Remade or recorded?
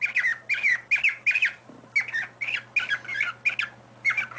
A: recorded